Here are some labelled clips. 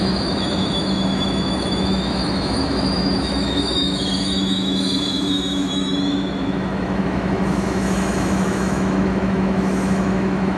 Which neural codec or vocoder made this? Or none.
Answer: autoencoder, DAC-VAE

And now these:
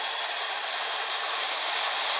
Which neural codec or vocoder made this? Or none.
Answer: none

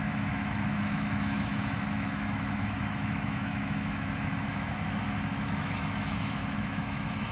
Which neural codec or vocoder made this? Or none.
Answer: autoencoder, DAC-VAE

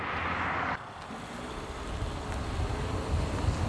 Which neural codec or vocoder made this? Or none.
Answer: none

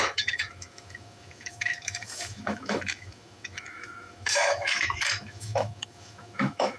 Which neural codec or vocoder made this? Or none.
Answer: autoencoder, DAC-VAE